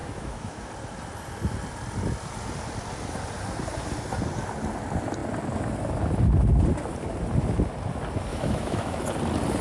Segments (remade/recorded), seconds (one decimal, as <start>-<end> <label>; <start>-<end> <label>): 0.0-0.7 remade; 0.7-8.3 recorded; 8.3-9.0 remade; 9.0-9.6 recorded